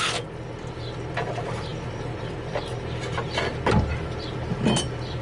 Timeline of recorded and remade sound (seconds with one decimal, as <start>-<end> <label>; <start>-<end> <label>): 0.0-5.2 recorded

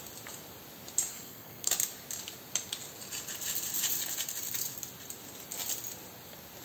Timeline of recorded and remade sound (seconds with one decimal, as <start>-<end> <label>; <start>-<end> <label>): 0.0-1.1 recorded; 1.1-1.7 remade; 1.7-6.6 recorded

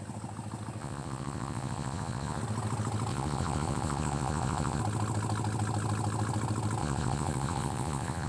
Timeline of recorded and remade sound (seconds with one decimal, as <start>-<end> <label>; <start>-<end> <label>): 0.0-0.8 recorded; 0.8-2.4 remade; 2.4-3.1 recorded; 3.1-4.8 remade; 4.8-6.8 recorded; 6.8-8.3 remade

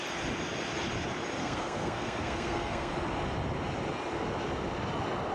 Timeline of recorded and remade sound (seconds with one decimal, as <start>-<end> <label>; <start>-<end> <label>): 0.0-1.4 recorded; 1.4-2.9 remade; 2.9-5.3 recorded

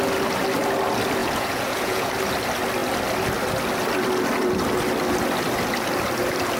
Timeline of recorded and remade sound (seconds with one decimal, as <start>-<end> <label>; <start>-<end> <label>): 0.0-1.2 recorded; 1.2-2.1 remade; 2.1-6.6 recorded

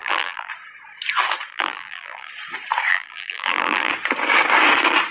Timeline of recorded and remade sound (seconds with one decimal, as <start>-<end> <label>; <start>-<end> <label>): 0.0-0.5 remade; 0.5-1.5 recorded; 1.5-2.3 remade; 2.3-2.9 recorded; 2.9-3.9 remade; 3.9-5.1 recorded